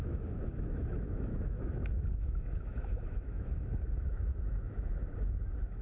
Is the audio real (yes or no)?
no